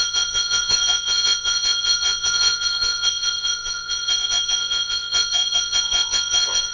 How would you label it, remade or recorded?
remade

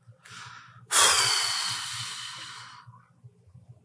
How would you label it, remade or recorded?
recorded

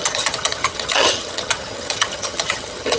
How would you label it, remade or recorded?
remade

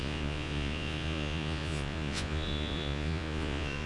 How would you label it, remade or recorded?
remade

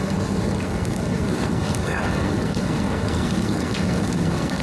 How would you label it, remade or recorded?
remade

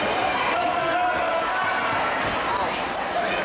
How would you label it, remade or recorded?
recorded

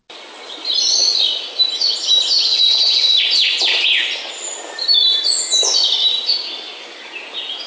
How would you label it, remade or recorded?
recorded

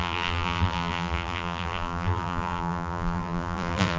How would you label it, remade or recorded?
remade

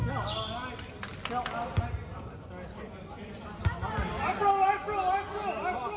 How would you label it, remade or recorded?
recorded